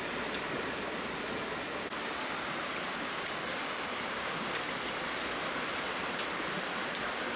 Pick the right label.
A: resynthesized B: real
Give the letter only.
B